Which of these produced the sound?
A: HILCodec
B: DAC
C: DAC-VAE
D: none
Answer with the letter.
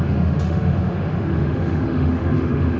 C